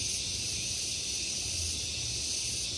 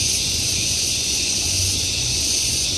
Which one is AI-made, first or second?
second